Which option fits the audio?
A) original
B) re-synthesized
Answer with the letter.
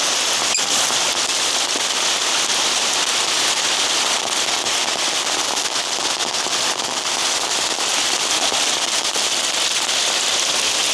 A